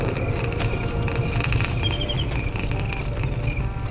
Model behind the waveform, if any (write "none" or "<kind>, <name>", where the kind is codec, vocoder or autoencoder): vocoder, BigVGAN v2